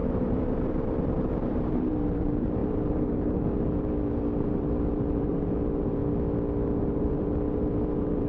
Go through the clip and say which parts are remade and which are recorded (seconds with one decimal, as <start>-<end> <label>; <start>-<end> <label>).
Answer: 0.0-6.0 remade; 6.0-6.8 recorded; 6.8-8.3 remade